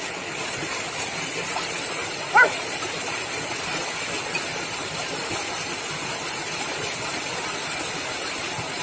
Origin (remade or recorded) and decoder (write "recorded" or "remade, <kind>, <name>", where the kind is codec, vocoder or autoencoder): recorded